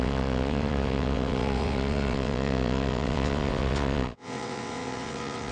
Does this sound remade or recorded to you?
remade